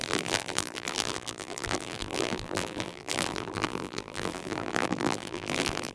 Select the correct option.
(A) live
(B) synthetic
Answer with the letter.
B